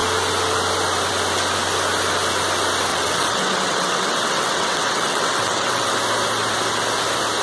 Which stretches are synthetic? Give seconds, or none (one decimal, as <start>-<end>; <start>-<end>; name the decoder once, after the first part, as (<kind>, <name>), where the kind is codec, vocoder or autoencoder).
2.9-5.9 (vocoder, WaveNeXt)

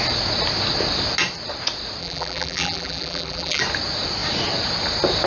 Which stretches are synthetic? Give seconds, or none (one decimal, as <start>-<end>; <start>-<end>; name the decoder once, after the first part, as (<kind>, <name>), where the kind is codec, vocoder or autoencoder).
2.0-3.6 (vocoder, BigVGAN v2)

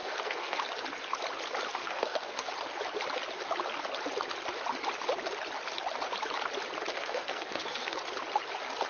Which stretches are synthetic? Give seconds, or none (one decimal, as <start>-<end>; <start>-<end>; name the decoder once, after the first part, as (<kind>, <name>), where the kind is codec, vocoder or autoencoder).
0.0-0.6 (codec, SNAC); 1.8-2.5; 6.9-8.0

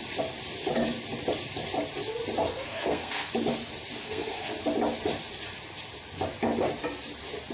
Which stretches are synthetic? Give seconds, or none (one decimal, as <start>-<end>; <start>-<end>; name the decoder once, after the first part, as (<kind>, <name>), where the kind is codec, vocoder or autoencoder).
2.4-3.3 (codec, SNAC); 4.0-4.5

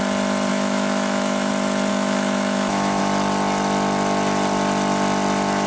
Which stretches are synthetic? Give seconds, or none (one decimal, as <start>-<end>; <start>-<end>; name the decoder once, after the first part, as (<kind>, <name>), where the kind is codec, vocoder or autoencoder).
0.5-1.5 (autoencoder, DAC-VAE); 1.9-3.0